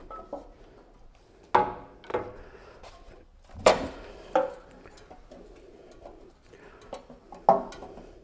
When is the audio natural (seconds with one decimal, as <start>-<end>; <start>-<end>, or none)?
0.0-2.1; 4.3-8.2